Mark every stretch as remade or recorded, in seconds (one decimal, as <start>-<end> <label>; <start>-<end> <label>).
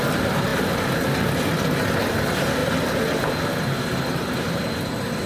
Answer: 0.0-5.3 recorded